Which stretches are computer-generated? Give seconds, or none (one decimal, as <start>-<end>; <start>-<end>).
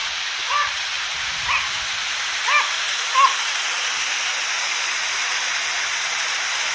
none